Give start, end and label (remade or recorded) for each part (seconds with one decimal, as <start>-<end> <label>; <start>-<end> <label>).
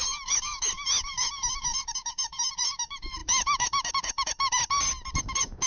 0.0-4.6 remade; 4.6-5.2 recorded; 5.2-5.7 remade